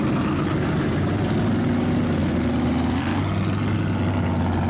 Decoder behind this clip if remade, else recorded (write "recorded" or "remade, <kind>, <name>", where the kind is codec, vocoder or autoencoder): recorded